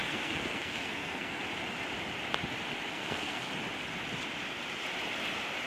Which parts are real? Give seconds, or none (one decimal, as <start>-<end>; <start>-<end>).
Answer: 1.4-2.9; 3.5-5.7